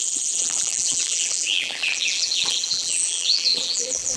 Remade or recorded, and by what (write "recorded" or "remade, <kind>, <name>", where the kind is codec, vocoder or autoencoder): remade, vocoder, BigVGAN v2